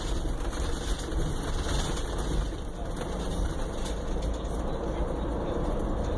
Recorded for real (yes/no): yes